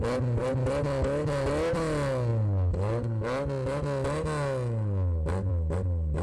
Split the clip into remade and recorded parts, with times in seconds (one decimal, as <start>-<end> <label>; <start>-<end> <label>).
0.0-6.2 recorded